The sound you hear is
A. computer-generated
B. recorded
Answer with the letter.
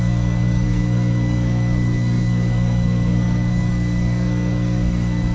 A